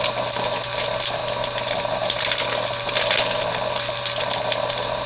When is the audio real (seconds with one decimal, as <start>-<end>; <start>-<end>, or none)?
0.0-5.1